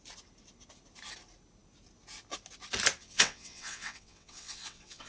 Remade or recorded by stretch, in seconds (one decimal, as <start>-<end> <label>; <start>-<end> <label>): 0.0-3.0 recorded; 3.0-5.1 remade